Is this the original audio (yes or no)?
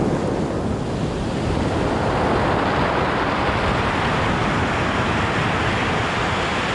yes